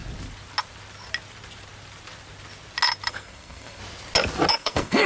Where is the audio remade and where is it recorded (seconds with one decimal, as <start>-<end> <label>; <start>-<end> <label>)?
0.0-3.1 recorded; 3.1-3.8 remade; 3.8-4.5 recorded; 4.5-5.1 remade

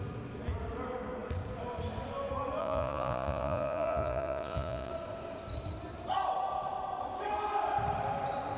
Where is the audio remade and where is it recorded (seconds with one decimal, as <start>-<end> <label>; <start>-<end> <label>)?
0.0-2.6 recorded; 2.6-4.9 remade; 4.9-8.6 recorded

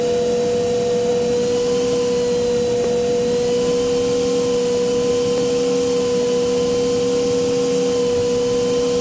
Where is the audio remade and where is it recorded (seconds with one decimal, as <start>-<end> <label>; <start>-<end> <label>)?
0.0-9.0 recorded

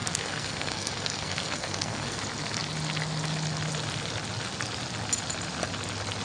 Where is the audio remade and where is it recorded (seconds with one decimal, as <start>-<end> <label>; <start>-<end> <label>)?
0.0-2.2 remade; 2.2-6.2 recorded

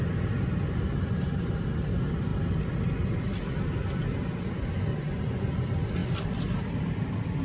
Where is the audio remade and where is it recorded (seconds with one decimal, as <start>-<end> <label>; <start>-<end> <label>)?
0.0-4.9 recorded; 4.9-5.5 remade; 5.5-7.4 recorded

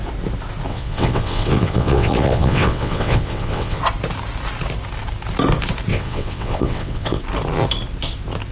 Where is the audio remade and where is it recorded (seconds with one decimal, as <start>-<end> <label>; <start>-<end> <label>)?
0.0-0.7 recorded; 0.7-3.8 remade; 3.8-5.9 recorded; 5.9-7.2 remade; 7.2-8.5 recorded

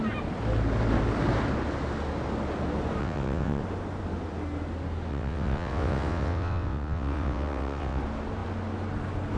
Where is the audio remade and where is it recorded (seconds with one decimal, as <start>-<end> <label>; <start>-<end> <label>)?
0.0-3.0 recorded; 3.0-3.6 remade; 3.6-5.1 recorded; 5.1-8.0 remade; 8.0-9.4 recorded